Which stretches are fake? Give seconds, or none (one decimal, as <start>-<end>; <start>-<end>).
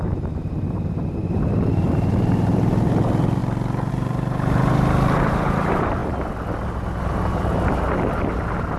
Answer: 0.0-3.4; 3.9-6.0